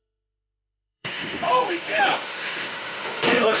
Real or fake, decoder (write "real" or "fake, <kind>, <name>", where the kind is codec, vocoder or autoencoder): fake, autoencoder, DAC-VAE